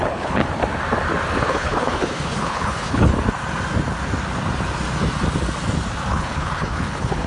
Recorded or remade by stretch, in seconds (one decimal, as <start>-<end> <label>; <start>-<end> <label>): 0.0-0.4 remade; 0.4-1.4 recorded; 1.4-3.1 remade; 3.1-6.1 recorded; 6.1-7.3 remade